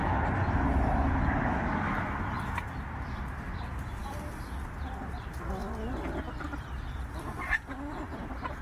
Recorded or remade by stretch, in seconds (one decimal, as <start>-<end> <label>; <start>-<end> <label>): 0.0-8.6 recorded

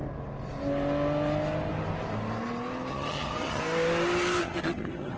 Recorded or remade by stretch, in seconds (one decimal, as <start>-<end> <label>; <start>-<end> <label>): 0.0-2.9 recorded; 2.9-3.6 remade; 3.6-4.4 recorded; 4.4-5.2 remade